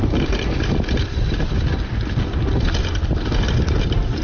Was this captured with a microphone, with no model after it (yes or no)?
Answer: yes